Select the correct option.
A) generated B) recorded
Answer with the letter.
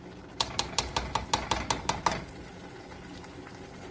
B